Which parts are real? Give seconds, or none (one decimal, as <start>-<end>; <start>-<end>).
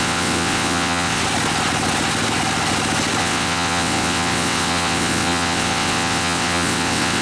1.2-3.2